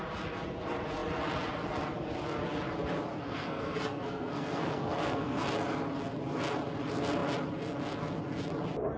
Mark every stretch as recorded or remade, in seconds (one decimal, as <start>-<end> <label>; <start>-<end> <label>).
0.0-3.1 recorded; 3.1-5.4 remade; 5.4-9.0 recorded